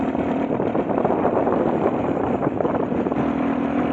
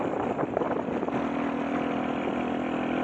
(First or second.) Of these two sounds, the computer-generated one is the first